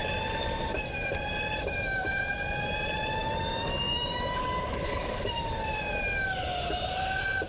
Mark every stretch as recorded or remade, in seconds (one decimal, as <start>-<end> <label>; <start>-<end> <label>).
0.0-3.2 recorded; 3.2-5.3 remade; 5.3-7.5 recorded